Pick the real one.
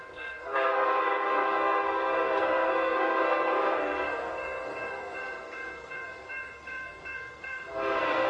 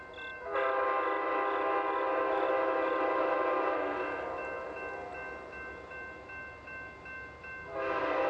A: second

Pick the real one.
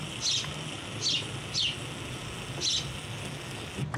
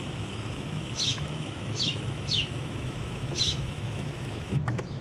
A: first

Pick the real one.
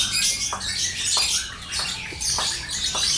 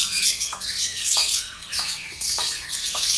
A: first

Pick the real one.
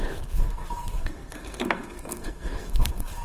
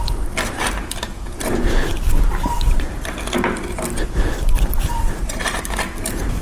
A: second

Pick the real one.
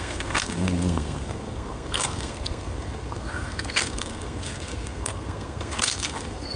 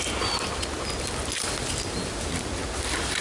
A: second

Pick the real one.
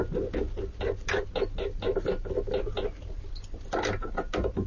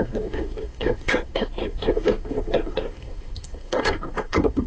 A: first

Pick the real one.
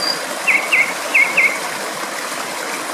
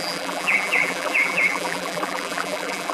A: first